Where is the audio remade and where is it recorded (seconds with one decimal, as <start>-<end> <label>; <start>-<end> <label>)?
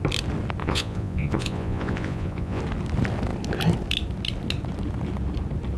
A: 0.0-0.6 recorded; 0.6-2.6 remade; 2.6-5.8 recorded